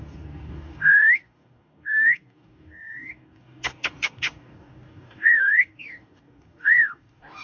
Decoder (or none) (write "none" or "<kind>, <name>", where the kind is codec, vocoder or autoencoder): codec, DAC